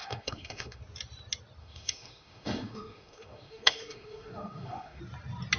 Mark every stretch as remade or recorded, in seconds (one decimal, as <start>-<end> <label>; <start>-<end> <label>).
0.0-0.8 remade; 0.8-1.6 recorded; 1.6-5.0 remade; 5.0-5.6 recorded